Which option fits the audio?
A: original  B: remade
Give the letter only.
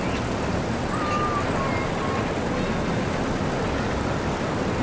A